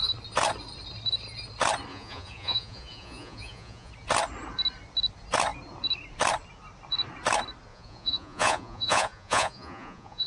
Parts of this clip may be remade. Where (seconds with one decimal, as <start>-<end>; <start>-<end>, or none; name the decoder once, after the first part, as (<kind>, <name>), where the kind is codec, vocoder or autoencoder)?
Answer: 1.9-3.9 (vocoder, Vocos); 7.7-10.3